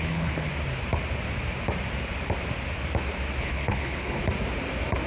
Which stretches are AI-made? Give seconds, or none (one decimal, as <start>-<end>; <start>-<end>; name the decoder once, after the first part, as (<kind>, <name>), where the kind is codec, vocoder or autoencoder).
0.0-0.5 (codec, HILCodec); 3.4-4.2

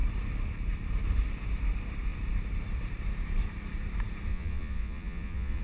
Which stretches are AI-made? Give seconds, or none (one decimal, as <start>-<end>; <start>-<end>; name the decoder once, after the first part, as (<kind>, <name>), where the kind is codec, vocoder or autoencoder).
4.3-5.6 (vocoder, Vocos)

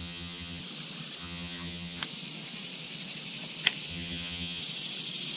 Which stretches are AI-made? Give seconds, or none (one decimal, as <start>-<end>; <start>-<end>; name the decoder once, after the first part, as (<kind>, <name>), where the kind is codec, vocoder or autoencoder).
0.0-0.6 (vocoder, HiFi-GAN); 1.2-2.0; 3.9-4.6

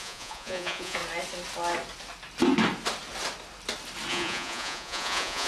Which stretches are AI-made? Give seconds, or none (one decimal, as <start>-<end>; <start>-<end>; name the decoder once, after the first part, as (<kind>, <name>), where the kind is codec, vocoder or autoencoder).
0.0-1.0 (vocoder, Vocos); 4.1-5.5

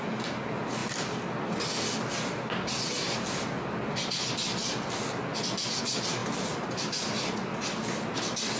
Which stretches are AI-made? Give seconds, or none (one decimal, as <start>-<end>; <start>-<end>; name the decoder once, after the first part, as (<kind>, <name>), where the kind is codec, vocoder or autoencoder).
5.3-5.8 (vocoder, BigVGAN v2); 6.2-8.6

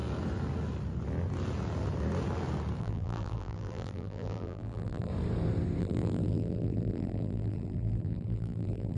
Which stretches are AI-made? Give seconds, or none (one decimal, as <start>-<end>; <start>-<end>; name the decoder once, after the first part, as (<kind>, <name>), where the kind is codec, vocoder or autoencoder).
2.8-5.1 (vocoder, BigVGAN v2); 5.8-9.0

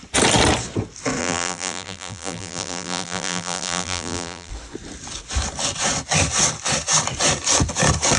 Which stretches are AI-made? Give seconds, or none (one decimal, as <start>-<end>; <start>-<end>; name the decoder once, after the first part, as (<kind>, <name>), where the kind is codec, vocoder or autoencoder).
1.2-4.5 (vocoder, BigVGAN v2)